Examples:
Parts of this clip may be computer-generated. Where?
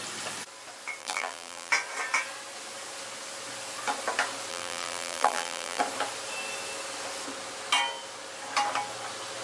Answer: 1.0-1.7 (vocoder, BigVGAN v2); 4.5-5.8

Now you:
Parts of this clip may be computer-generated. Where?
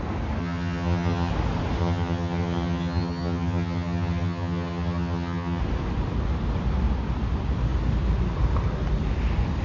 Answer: 0.4-1.3 (vocoder, HiFi-GAN); 1.8-5.6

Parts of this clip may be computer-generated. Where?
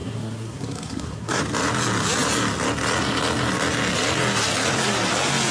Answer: 0.0-1.4 (codec, SNAC)